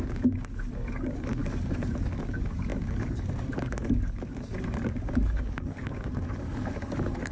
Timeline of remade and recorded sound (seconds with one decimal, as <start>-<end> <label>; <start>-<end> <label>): 0.0-7.3 remade